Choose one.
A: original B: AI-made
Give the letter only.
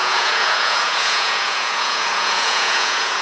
B